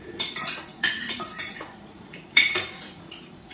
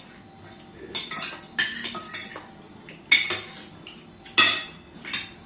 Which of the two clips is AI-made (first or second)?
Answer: first